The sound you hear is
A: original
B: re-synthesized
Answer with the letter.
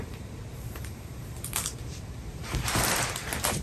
B